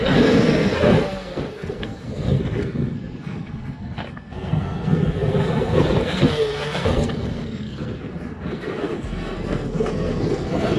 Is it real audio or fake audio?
fake